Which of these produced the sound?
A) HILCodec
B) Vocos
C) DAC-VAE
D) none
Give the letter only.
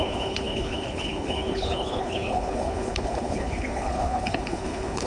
A